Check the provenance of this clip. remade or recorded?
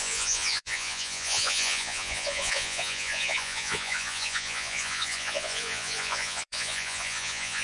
remade